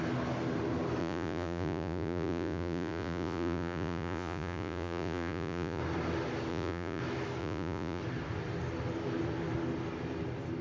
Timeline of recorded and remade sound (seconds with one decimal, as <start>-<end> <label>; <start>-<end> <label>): 0.0-1.0 recorded; 1.0-5.8 remade; 5.8-6.5 recorded; 6.5-7.0 remade; 7.0-7.4 recorded; 7.4-8.0 remade; 8.0-10.6 recorded